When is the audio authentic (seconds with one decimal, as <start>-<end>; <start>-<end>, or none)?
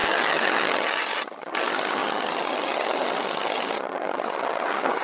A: none